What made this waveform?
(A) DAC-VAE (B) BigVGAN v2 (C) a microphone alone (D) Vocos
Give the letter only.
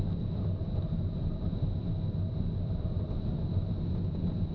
C